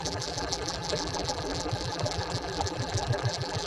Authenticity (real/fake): fake